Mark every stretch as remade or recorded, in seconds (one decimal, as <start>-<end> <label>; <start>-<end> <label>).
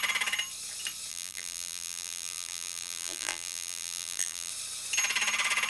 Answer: 0.0-1.1 recorded; 1.1-4.5 remade; 4.5-5.7 recorded